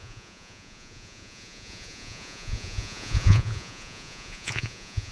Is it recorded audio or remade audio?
remade